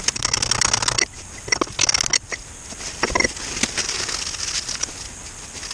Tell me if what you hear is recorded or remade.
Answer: recorded